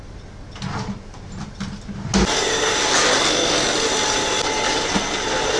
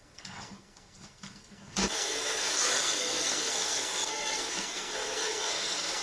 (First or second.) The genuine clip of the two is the first